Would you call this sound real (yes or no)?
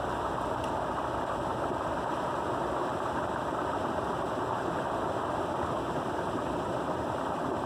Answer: yes